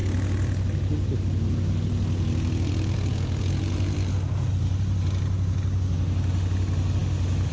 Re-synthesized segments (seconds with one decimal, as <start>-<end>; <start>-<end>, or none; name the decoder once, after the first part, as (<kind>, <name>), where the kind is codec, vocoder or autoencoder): none